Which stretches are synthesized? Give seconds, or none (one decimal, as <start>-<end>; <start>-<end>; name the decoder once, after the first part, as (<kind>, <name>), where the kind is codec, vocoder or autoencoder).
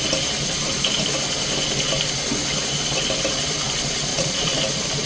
4.1-4.6 (vocoder, Vocos)